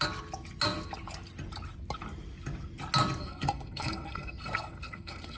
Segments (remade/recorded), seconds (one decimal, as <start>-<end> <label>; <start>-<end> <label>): 0.0-3.2 recorded; 3.2-5.4 remade

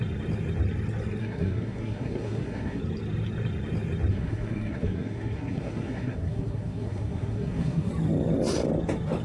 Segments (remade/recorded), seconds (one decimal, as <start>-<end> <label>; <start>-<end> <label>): 0.0-1.2 recorded; 1.2-2.8 remade; 2.8-4.1 recorded; 4.1-7.9 remade; 7.9-9.2 recorded

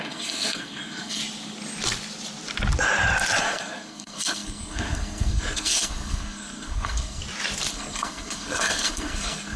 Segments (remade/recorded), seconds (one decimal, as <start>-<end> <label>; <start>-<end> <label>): 0.0-1.2 remade; 1.2-3.4 recorded; 3.4-7.2 remade; 7.2-7.7 recorded; 7.7-9.6 remade

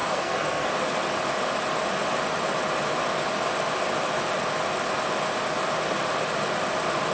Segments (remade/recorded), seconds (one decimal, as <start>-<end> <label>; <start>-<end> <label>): 0.0-0.7 remade; 0.7-7.1 recorded

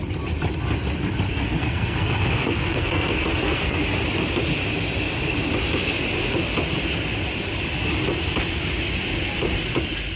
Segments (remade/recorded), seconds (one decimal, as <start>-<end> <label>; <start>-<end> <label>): 0.0-1.3 recorded; 1.3-3.8 remade; 3.8-10.2 recorded

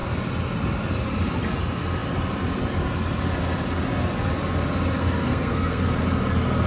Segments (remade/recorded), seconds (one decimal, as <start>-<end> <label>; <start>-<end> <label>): 0.0-5.0 recorded; 5.0-5.8 remade; 5.8-6.7 recorded

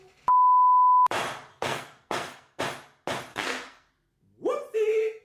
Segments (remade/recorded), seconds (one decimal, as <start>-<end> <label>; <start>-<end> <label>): 0.0-1.5 recorded; 1.5-2.6 remade; 2.6-3.3 recorded; 3.3-3.9 remade; 3.9-5.2 recorded